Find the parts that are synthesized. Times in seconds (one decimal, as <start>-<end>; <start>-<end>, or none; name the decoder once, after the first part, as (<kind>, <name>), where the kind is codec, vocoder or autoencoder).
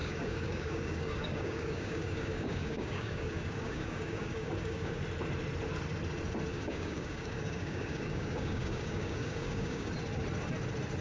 0.0-5.0 (codec, DAC); 6.5-9.9